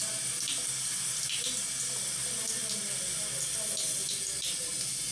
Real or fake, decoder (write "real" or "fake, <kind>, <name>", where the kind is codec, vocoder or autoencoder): real